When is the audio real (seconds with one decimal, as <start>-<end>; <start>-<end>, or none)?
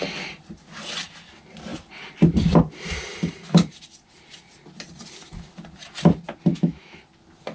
0.0-6.5; 7.0-7.5